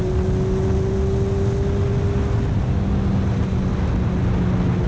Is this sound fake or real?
real